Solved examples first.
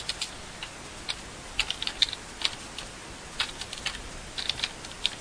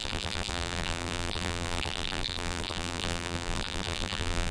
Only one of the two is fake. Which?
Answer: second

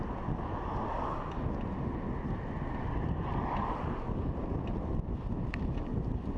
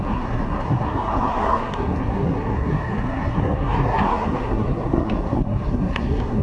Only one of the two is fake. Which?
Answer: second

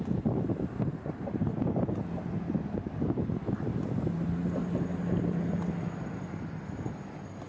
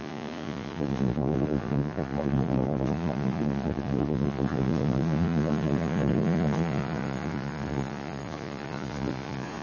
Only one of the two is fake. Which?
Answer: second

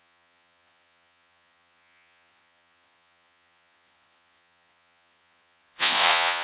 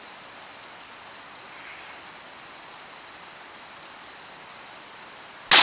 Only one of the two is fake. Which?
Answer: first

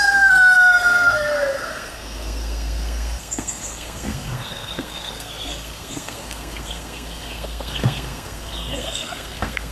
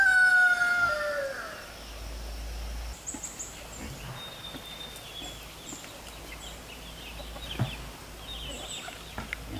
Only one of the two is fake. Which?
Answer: first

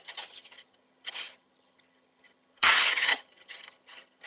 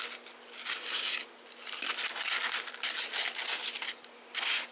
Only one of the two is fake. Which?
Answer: first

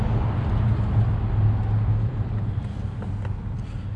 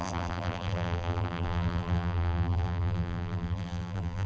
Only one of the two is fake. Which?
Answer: second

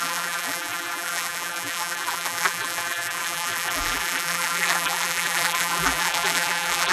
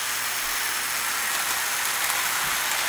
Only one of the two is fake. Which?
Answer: first